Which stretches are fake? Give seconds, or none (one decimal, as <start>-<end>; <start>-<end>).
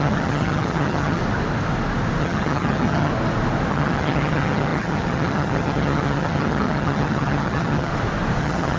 0.0-1.2; 2.2-3.1; 3.7-7.9; 8.4-8.8